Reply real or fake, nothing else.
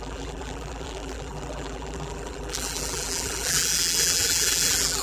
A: fake